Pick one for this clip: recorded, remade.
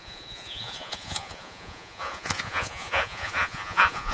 remade